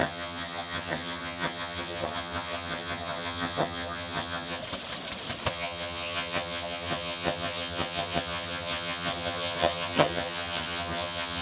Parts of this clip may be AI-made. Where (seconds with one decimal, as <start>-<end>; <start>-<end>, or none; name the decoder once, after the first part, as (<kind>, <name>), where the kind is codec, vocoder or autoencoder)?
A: 0.0-4.6 (vocoder, HiFi-GAN); 5.5-11.4